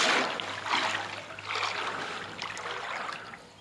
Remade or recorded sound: recorded